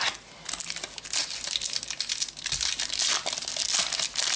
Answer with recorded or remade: recorded